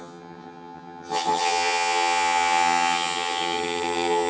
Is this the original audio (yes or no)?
no